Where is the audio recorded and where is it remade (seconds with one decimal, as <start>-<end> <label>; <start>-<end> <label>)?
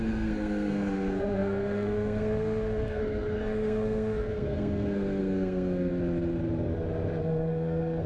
0.0-5.9 remade; 5.9-7.2 recorded; 7.2-8.1 remade